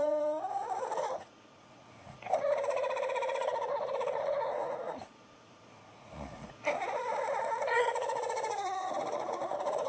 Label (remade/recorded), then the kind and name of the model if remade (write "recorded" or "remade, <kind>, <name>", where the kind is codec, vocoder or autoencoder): remade, vocoder, Vocos